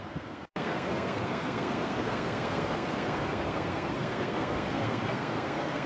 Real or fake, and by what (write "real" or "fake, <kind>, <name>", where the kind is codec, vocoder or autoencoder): fake, codec, SNAC